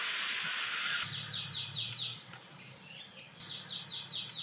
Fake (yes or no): no